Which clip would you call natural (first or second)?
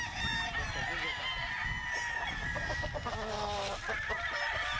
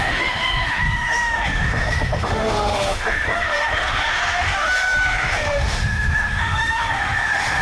first